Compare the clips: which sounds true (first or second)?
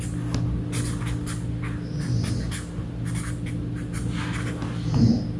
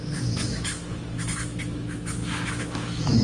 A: first